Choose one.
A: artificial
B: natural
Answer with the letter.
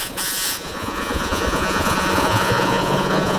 A